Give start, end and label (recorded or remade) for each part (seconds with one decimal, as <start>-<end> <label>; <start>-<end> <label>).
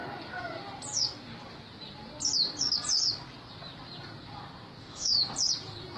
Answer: 0.0-4.8 recorded; 4.8-5.3 remade; 5.3-6.0 recorded